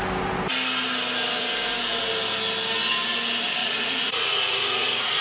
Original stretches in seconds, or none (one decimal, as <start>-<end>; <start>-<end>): 0.0-3.6